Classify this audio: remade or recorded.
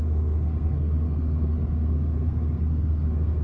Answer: remade